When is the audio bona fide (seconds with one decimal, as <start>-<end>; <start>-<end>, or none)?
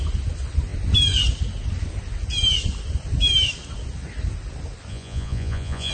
0.0-4.9